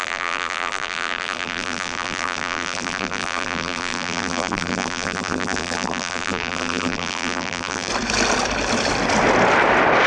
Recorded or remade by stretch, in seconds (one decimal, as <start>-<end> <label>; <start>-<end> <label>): 0.0-7.9 remade; 7.9-10.1 recorded